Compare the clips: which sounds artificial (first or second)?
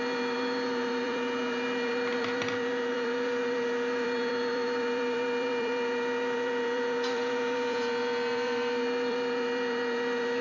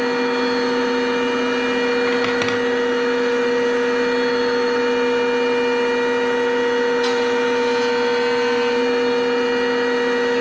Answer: first